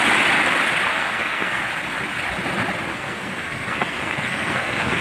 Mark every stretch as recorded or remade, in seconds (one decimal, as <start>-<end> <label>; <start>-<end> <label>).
0.0-0.9 recorded; 0.9-1.6 remade; 1.6-2.9 recorded; 2.9-5.0 remade